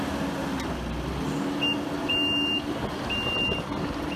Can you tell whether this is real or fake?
real